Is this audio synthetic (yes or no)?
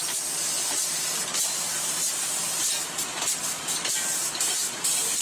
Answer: yes